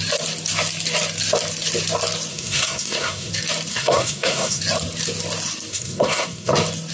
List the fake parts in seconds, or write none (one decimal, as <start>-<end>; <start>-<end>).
2.3-3.3; 3.7-4.6; 5.7-6.5